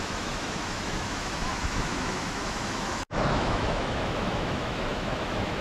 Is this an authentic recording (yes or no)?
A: no